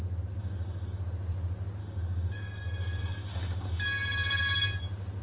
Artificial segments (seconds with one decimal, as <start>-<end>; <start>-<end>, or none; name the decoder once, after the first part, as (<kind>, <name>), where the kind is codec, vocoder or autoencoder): 0.4-1.0 (codec, DAC); 1.8-4.8